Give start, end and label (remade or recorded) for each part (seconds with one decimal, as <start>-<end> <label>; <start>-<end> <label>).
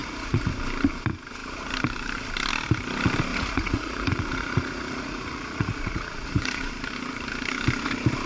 0.0-0.5 remade; 0.5-3.3 recorded; 3.3-6.7 remade; 6.7-8.3 recorded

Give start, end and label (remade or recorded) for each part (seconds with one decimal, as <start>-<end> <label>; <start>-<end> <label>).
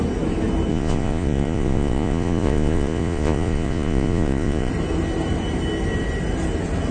0.0-0.7 recorded; 0.7-4.7 remade; 4.7-6.9 recorded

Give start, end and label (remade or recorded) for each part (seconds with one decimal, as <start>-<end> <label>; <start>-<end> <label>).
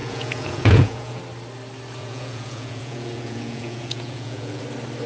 0.0-1.2 remade; 1.2-2.0 recorded; 2.0-4.6 remade; 4.6-5.1 recorded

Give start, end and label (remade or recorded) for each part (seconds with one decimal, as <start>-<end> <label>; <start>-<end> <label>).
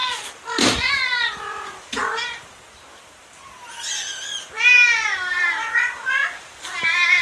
0.0-7.2 recorded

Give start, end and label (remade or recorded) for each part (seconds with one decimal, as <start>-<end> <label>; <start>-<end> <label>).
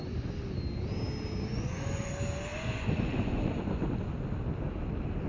0.0-1.5 recorded; 1.5-2.1 remade; 2.1-2.5 recorded; 2.5-3.8 remade; 3.8-5.3 recorded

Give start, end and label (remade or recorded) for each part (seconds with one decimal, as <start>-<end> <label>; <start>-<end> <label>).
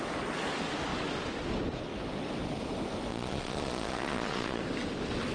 0.0-3.1 recorded; 3.1-4.6 remade; 4.6-5.3 recorded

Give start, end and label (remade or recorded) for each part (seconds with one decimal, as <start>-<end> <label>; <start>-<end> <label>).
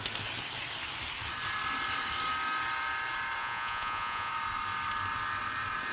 0.0-3.4 recorded; 3.4-4.3 remade; 4.3-5.9 recorded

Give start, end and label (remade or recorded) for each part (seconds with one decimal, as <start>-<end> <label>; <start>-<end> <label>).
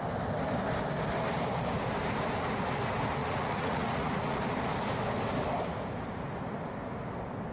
0.0-3.2 recorded; 3.2-4.4 remade; 4.4-7.5 recorded